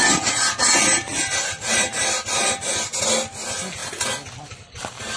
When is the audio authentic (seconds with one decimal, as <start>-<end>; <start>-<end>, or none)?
0.0-1.1; 2.0-5.2